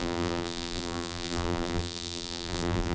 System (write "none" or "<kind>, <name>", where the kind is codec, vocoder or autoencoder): vocoder, BigVGAN v2